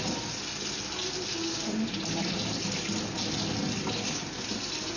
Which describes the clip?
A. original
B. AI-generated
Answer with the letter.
A